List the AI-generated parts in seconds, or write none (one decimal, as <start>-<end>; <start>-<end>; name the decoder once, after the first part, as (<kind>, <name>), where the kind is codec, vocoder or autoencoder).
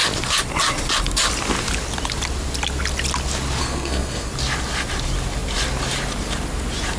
3.6-4.3 (codec, SNAC)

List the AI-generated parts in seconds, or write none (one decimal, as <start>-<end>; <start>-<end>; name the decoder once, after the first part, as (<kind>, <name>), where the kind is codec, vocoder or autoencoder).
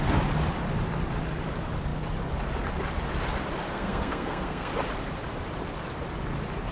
3.7-4.7 (codec, SNAC)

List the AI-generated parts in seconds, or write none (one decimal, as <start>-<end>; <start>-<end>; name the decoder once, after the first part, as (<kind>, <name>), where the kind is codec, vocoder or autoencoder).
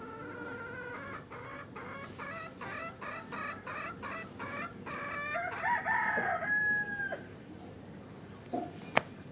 none